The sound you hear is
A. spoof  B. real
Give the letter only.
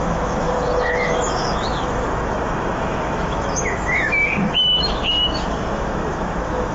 A